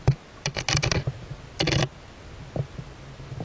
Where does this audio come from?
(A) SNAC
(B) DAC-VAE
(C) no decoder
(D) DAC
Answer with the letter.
C